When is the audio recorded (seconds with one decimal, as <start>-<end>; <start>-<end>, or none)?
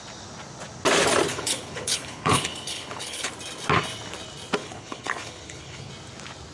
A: 0.0-1.3; 3.3-4.6; 5.9-6.5